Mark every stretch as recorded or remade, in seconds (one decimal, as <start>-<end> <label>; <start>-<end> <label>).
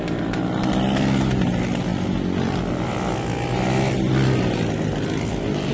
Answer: 0.0-5.7 recorded